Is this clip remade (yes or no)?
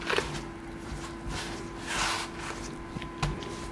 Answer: yes